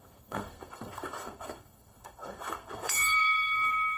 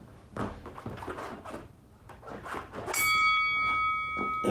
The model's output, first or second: first